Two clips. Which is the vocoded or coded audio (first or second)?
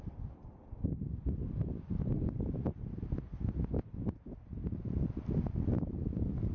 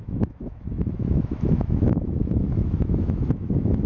second